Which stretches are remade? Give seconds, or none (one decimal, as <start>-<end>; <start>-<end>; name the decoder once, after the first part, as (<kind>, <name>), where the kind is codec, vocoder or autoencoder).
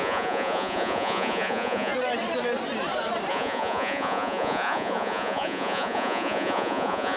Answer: 0.0-1.9 (vocoder, Vocos); 3.3-7.2